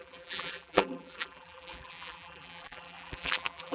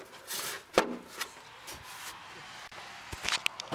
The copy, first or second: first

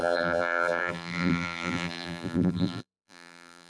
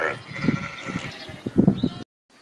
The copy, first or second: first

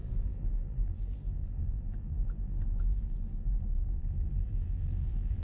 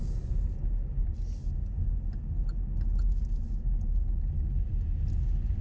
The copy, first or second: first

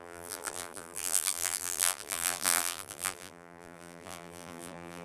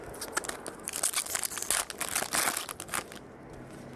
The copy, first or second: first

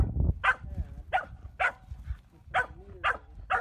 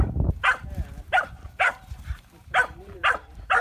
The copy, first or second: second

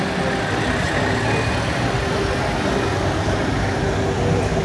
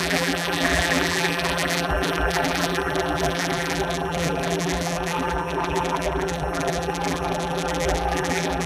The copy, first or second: second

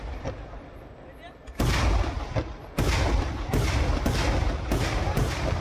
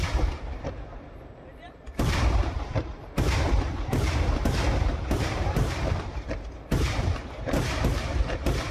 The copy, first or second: second